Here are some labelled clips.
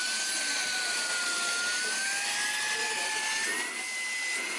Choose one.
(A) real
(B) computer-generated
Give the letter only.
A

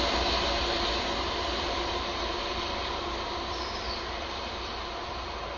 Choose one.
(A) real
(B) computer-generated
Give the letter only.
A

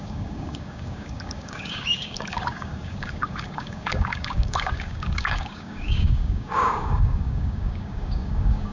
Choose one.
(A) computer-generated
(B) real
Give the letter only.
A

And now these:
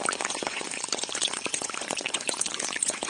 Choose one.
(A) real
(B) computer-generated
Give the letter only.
B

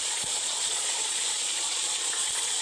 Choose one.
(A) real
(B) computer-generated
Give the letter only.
B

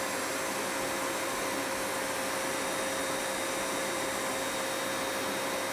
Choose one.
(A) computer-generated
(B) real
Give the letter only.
B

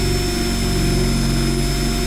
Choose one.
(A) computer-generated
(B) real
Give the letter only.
B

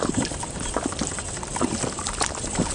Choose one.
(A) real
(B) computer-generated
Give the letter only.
A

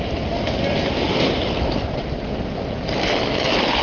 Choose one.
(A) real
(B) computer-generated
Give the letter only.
A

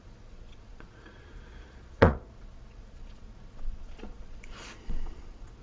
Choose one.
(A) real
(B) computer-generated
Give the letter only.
B